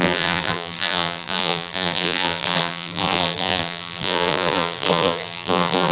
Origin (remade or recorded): remade